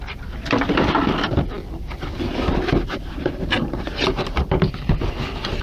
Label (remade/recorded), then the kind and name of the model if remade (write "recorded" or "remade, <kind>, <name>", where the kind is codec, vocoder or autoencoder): remade, vocoder, BigVGAN v2